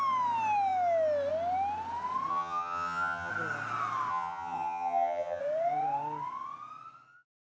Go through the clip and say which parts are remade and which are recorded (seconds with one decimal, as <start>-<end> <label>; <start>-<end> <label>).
0.0-2.3 recorded; 2.3-3.3 remade; 3.3-4.1 recorded; 4.1-5.4 remade; 5.4-7.6 recorded